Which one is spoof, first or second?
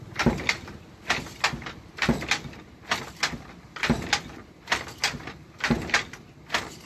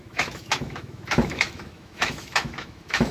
second